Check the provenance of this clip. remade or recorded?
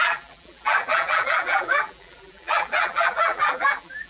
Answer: remade